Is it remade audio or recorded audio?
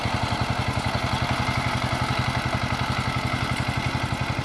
recorded